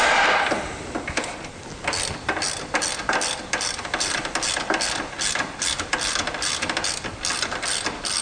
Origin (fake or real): real